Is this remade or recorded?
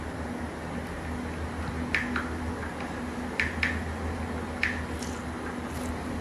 recorded